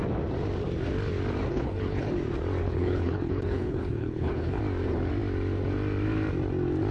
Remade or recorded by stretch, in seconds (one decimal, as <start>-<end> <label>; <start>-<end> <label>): 0.0-1.5 recorded; 1.5-2.1 remade; 2.1-2.6 recorded; 2.6-4.6 remade; 4.6-6.9 recorded